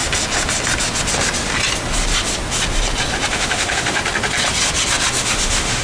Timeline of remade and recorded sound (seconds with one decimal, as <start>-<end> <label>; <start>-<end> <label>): 0.0-3.3 recorded; 3.3-4.0 remade; 4.0-5.2 recorded; 5.2-5.8 remade

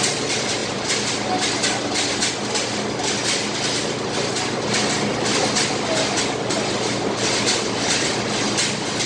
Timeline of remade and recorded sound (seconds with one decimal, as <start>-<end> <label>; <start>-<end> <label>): 0.0-9.1 recorded

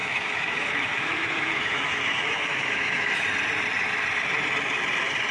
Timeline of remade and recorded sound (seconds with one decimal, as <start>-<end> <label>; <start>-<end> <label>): 0.0-3.2 remade; 3.2-5.3 recorded

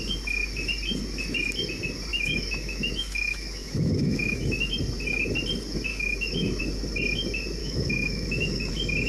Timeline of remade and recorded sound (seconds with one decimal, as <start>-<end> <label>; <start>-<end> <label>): 0.0-2.1 recorded; 2.1-4.7 remade; 4.7-5.9 recorded; 5.9-6.6 remade; 6.6-7.6 recorded; 7.6-8.7 remade; 8.7-9.1 recorded

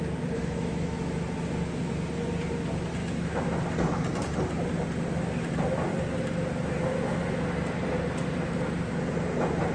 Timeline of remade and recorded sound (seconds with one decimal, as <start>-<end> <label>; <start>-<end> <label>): 0.0-0.4 recorded; 0.4-1.2 remade; 1.2-3.0 recorded; 3.0-3.5 remade; 3.5-9.7 recorded

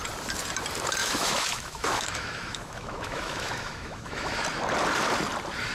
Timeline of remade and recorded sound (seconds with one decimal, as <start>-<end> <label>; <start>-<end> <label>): 0.0-1.0 recorded; 1.0-4.4 remade; 4.4-5.7 recorded

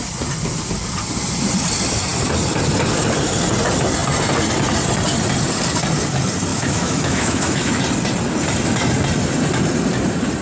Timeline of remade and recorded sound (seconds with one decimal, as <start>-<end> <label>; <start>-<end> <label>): 0.0-6.5 recorded; 6.5-7.8 remade; 7.8-10.4 recorded

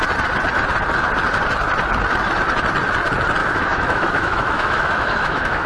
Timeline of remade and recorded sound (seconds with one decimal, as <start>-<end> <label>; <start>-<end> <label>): 0.0-3.4 recorded; 3.4-5.7 remade